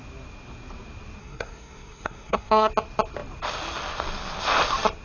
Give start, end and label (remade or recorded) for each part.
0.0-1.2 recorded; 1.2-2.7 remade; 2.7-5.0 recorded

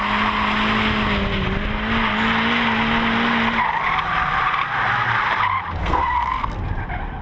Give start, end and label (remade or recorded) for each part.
0.0-5.8 recorded; 5.8-6.6 remade; 6.6-7.2 recorded

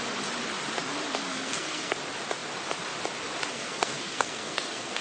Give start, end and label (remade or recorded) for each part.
0.0-1.3 recorded; 1.3-1.9 remade; 1.9-3.5 recorded; 3.5-5.0 remade

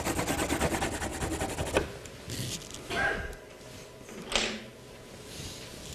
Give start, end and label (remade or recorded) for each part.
0.0-5.9 recorded

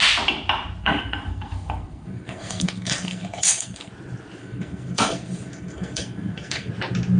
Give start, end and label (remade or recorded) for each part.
0.0-0.8 recorded; 0.8-3.9 remade; 3.9-4.4 recorded; 4.4-6.7 remade; 6.7-7.2 recorded

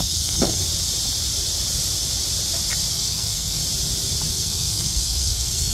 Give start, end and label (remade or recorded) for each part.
0.0-0.6 remade; 0.6-2.9 recorded; 2.9-3.6 remade; 3.6-4.3 recorded; 4.3-5.7 remade